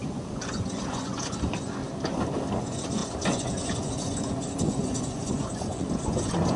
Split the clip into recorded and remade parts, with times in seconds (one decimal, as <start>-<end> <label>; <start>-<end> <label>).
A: 0.0-1.8 remade; 1.8-2.6 recorded; 2.6-6.6 remade